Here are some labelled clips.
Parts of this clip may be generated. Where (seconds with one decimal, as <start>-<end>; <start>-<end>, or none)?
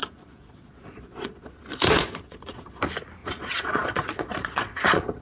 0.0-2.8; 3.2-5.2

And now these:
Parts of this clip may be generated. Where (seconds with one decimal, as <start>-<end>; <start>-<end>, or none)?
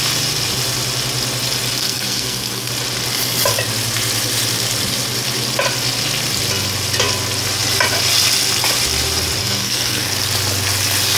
1.8-2.7; 9.4-10.1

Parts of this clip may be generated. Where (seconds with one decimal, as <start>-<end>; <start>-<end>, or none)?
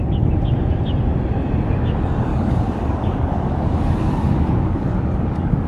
2.3-5.7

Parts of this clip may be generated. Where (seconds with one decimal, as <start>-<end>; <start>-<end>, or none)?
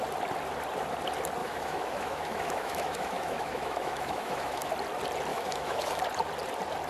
1.4-4.7; 5.3-6.0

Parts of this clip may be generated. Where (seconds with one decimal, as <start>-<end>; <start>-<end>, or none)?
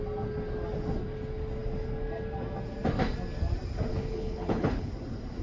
3.9-4.9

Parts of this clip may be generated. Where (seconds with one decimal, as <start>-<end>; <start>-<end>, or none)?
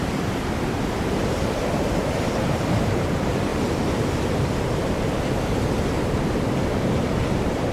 0.0-3.5; 4.8-7.7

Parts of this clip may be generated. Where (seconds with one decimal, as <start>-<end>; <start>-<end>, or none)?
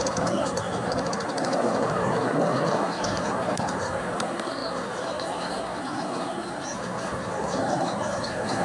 0.0-8.6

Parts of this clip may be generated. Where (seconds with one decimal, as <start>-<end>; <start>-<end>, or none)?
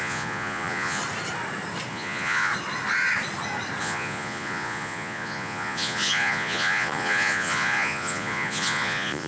0.0-1.0; 1.9-2.5; 3.8-9.3